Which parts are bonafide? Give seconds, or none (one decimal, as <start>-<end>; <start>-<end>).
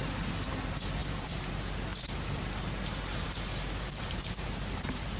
0.0-1.0; 1.5-1.9